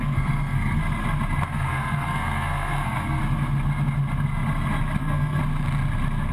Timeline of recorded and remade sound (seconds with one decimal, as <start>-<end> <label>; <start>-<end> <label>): 0.0-0.8 remade; 0.8-1.4 recorded; 1.4-3.2 remade; 3.2-5.0 recorded; 5.0-5.4 remade; 5.4-6.3 recorded